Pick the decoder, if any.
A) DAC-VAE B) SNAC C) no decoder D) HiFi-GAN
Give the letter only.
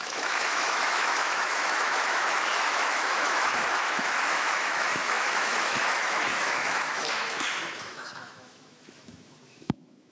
A